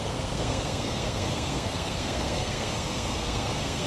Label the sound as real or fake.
fake